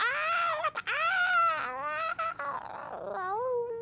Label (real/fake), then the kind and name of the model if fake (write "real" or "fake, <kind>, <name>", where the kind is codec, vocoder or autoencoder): real